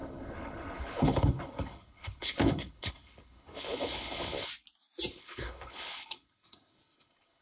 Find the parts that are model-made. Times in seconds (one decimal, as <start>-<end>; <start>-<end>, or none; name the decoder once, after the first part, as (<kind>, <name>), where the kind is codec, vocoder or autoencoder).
0.0-4.5 (codec, HILCodec); 5.1-7.4